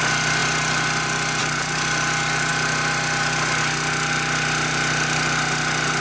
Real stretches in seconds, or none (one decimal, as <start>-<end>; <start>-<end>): 0.0-6.0